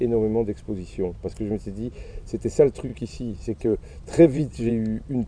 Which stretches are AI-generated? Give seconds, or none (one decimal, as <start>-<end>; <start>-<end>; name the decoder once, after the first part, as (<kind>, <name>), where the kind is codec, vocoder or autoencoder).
2.9-4.7 (vocoder, Vocos)